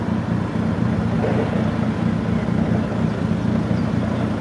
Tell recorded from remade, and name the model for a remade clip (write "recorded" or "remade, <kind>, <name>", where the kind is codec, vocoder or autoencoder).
recorded